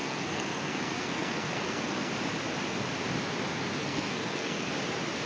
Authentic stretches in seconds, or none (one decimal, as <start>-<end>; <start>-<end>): 2.1-3.8; 4.7-5.3